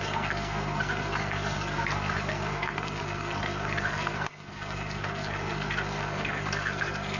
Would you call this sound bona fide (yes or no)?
no